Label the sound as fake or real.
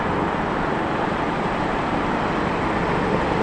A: real